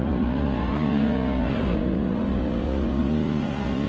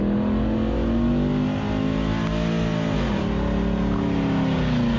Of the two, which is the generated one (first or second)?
first